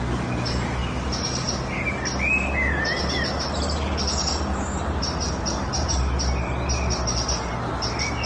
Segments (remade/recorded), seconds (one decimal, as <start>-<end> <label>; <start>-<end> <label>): 0.0-8.3 recorded

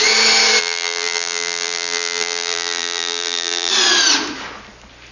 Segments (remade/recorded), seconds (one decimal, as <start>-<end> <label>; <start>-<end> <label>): 0.0-0.6 recorded; 0.6-3.7 remade; 3.7-5.1 recorded

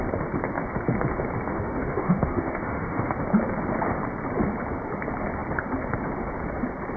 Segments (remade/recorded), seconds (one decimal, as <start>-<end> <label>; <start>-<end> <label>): 0.0-1.5 recorded; 1.5-3.0 remade; 3.0-7.0 recorded

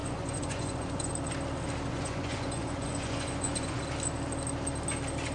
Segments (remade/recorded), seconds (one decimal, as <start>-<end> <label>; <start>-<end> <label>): 0.0-1.1 remade; 1.1-1.9 recorded; 1.9-3.8 remade; 3.8-5.3 recorded

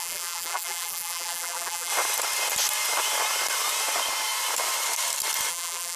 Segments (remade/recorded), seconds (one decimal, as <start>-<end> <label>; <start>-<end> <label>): 0.0-1.9 remade; 1.9-5.5 recorded; 5.5-6.0 remade

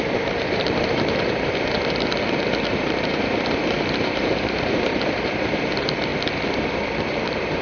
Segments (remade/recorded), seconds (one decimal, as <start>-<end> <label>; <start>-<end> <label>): 0.0-6.1 remade; 6.1-6.9 recorded; 6.9-7.6 remade

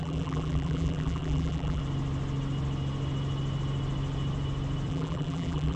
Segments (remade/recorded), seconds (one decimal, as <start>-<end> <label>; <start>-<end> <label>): 0.0-1.8 remade; 1.8-4.9 recorded; 4.9-5.8 remade

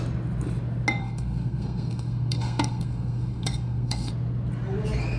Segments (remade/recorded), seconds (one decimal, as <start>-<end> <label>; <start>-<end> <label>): 0.0-1.0 recorded; 1.0-4.1 remade; 4.1-5.2 recorded